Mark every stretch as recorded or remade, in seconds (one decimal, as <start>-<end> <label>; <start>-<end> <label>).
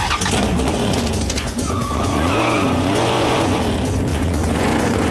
0.0-0.5 recorded; 0.5-3.6 remade; 3.6-4.1 recorded; 4.1-5.1 remade